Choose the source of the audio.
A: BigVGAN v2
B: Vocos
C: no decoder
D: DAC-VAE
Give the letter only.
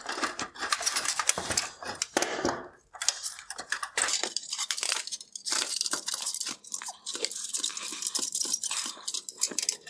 A